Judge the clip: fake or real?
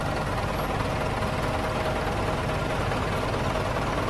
real